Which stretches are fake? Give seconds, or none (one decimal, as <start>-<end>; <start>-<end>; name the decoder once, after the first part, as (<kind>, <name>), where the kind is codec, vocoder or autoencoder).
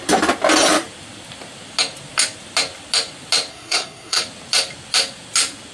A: 3.5-4.2 (codec, SNAC)